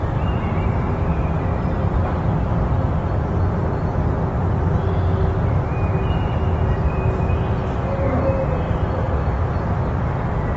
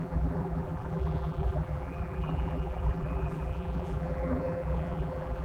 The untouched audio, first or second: first